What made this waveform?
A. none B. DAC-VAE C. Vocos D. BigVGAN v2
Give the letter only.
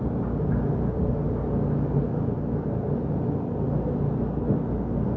A